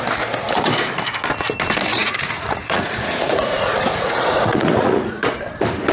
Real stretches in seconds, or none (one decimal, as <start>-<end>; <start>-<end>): 0.0-1.9; 5.4-5.9